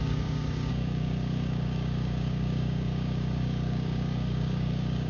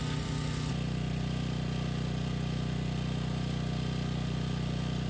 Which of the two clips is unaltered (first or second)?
second